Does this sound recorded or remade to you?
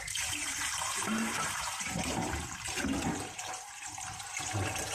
remade